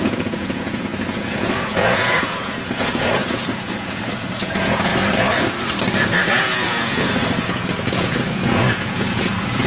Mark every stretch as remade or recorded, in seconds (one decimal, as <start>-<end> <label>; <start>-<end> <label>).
0.0-4.9 remade; 4.9-6.3 recorded; 6.3-9.7 remade